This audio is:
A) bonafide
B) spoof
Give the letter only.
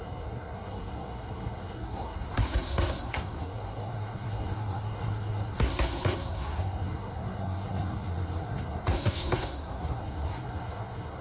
B